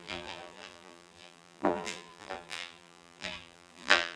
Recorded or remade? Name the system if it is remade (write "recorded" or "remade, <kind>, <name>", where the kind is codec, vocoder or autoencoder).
remade, vocoder, BigVGAN v2